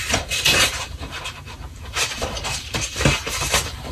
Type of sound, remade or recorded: remade